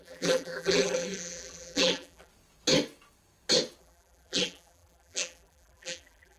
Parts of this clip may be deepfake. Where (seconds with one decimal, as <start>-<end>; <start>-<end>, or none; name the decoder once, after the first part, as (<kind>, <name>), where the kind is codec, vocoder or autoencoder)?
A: 0.0-2.3 (vocoder, BigVGAN v2); 3.8-6.4